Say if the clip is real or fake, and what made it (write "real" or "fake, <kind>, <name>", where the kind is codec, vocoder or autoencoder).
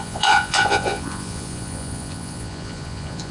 fake, vocoder, Vocos